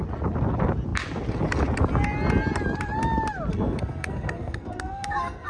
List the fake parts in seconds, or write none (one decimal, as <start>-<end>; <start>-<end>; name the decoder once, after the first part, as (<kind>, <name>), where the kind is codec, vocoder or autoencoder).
3.5-5.5 (codec, SNAC)